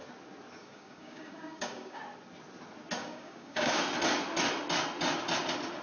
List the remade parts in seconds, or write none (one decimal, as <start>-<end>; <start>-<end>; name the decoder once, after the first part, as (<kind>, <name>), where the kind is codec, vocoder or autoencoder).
0.6-2.0 (codec, DAC); 3.0-3.8